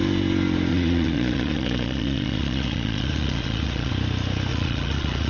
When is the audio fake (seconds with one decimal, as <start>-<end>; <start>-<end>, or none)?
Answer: 0.7-3.9; 4.5-5.3